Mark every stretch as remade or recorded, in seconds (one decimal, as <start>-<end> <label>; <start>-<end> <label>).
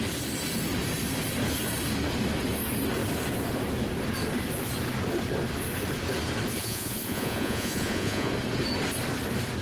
0.0-6.6 recorded; 6.6-8.3 remade; 8.3-9.6 recorded